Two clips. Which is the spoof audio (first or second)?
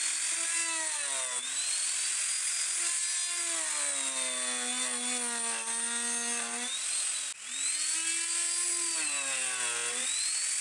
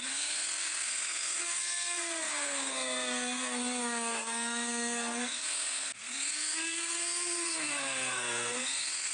second